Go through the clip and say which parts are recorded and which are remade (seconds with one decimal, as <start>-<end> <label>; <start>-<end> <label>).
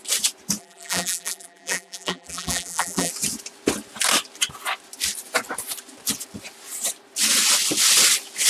0.0-0.6 recorded; 0.6-3.1 remade; 3.1-8.5 recorded